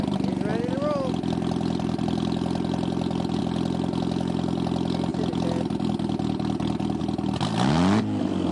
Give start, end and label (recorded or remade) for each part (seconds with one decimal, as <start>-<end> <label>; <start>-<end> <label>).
0.0-8.5 recorded